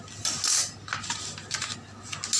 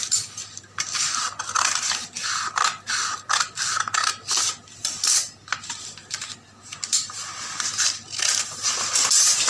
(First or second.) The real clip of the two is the first